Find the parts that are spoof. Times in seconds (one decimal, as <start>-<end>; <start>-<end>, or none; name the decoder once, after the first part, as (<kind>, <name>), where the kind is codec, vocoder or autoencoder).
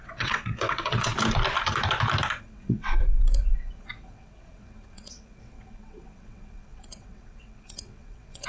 0.0-1.1 (vocoder, WaveNeXt); 2.4-8.5